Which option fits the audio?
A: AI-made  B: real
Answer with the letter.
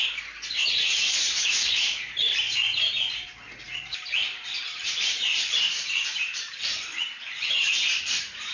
A